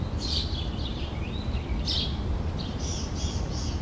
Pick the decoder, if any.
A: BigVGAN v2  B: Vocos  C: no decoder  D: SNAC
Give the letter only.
A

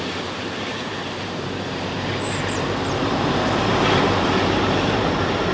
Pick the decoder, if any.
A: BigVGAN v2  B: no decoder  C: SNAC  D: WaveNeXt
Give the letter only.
A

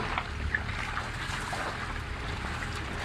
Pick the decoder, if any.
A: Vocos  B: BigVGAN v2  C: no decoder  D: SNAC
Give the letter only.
C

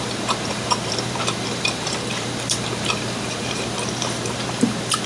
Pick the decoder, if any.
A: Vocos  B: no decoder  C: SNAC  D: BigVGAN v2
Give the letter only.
D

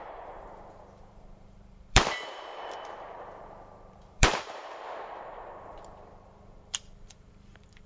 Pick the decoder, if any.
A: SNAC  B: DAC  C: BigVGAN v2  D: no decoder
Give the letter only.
C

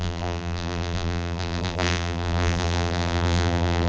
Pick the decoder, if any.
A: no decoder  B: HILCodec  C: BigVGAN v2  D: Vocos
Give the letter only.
C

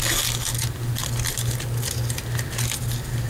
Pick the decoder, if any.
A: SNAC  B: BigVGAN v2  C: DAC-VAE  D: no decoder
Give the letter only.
D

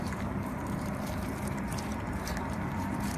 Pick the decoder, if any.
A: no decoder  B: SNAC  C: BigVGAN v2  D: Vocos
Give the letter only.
C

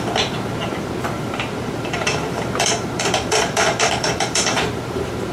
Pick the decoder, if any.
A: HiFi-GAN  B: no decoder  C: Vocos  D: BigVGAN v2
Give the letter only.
D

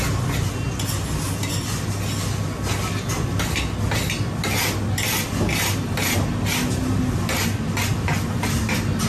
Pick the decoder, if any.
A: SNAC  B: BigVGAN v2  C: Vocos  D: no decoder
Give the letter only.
D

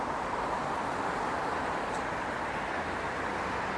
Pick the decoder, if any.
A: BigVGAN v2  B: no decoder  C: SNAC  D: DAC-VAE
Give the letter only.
B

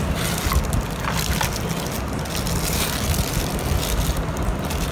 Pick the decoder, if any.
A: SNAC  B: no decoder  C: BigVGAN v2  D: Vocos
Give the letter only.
B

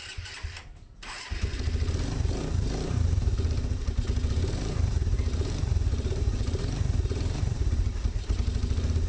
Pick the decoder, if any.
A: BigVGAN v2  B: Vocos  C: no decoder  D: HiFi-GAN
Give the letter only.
A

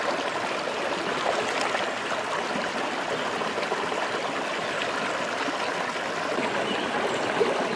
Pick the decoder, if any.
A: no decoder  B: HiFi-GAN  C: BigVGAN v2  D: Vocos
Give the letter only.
A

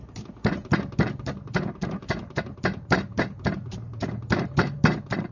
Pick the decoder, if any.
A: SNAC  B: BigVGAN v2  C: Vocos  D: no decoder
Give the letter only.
B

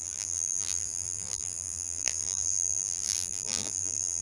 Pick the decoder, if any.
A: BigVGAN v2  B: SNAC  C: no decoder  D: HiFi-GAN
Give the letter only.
A